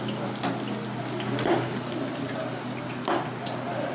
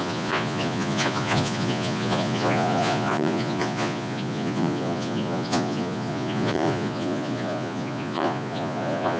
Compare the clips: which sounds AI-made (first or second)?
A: second